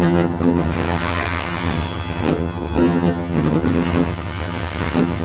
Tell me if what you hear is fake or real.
fake